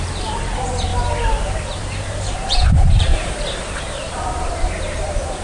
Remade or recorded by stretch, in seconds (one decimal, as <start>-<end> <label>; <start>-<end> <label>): 0.0-0.9 remade; 0.9-1.6 recorded; 1.6-3.1 remade; 3.1-3.7 recorded; 3.7-5.4 remade